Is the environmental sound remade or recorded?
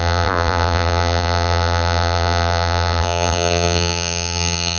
remade